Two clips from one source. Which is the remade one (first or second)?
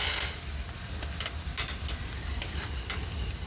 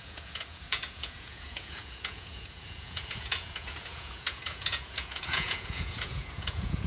second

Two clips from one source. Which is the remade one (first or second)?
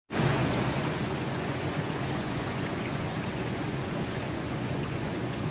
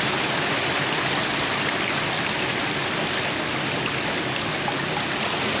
first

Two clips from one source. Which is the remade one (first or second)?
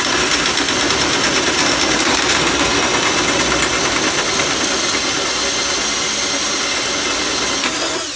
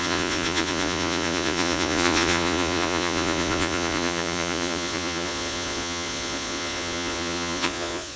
second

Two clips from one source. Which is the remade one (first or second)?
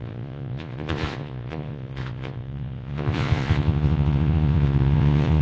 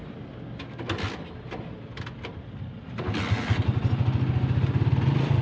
first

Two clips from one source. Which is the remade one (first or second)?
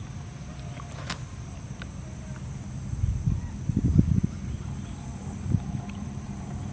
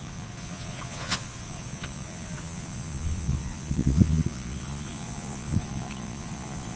second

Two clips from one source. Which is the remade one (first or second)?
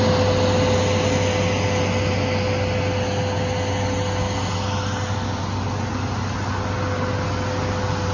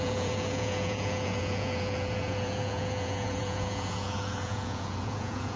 second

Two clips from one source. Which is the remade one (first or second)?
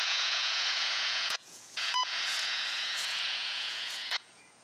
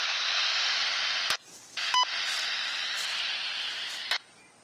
first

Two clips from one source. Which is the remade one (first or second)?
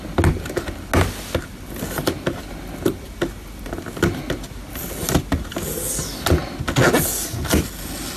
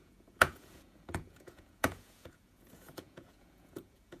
second